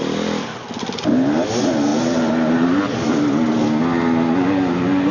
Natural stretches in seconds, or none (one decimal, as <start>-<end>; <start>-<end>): 0.0-1.9; 2.8-5.1